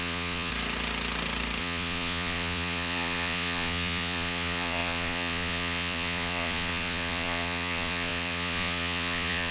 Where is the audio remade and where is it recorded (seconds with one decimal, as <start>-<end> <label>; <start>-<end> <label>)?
0.0-0.5 remade; 0.5-1.6 recorded; 1.6-9.5 remade